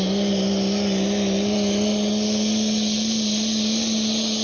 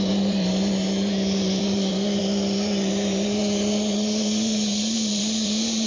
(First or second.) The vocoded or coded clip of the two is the second